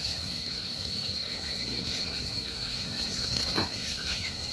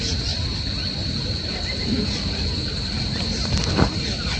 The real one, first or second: second